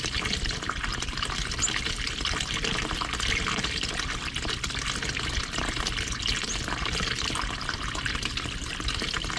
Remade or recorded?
recorded